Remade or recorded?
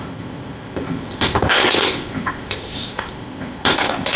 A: remade